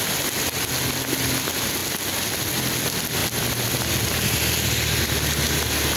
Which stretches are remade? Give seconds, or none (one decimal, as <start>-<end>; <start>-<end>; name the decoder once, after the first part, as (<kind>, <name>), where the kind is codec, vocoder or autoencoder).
none